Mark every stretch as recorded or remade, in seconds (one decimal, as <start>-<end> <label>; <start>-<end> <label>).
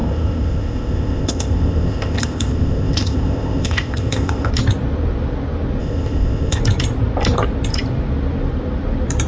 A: 0.0-4.5 remade; 4.5-5.8 recorded; 5.8-6.6 remade; 6.6-9.3 recorded